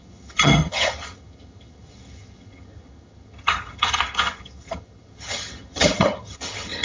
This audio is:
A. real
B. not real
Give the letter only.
B